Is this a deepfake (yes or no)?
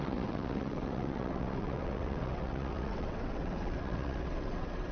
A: yes